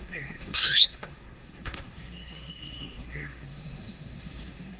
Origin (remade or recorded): remade